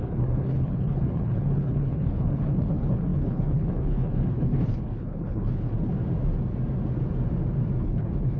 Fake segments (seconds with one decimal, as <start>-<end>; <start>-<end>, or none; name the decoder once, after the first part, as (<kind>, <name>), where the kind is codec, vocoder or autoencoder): 0.0-5.9 (codec, HILCodec); 7.8-8.4